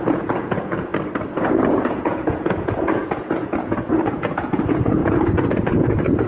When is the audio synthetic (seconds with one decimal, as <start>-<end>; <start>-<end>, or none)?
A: 0.0-0.9; 1.4-6.3